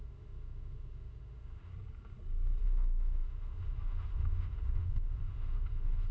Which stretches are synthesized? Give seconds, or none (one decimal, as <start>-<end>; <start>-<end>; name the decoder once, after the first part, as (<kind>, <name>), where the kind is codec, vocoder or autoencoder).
0.0-1.7 (autoencoder, DAC-VAE); 2.6-6.1

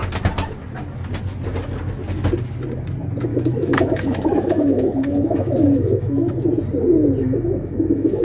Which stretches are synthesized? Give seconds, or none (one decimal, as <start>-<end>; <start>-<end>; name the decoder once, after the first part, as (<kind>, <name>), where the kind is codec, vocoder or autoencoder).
3.3-6.3 (autoencoder, DAC-VAE); 7.2-8.2

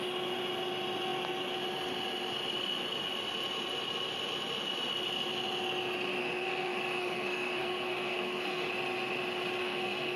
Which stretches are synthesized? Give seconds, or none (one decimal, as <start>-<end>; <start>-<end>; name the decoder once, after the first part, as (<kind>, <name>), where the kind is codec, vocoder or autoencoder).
6.2-8.7 (codec, SNAC); 9.6-10.2

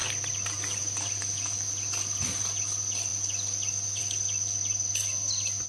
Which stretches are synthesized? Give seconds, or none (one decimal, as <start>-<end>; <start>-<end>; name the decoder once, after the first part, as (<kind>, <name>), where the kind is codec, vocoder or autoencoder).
none

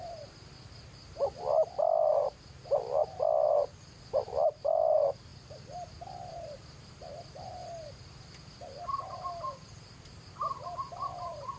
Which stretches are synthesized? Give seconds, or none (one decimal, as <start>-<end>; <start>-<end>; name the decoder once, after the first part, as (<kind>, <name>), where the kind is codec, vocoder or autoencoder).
0.0-1.0 (vocoder, BigVGAN v2); 2.0-3.0; 4.1-7.6; 9.0-11.6